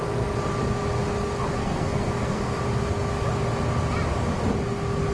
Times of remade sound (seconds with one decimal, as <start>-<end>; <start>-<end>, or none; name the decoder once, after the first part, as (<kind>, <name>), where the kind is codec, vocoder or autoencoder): 1.6-2.6 (codec, SNAC)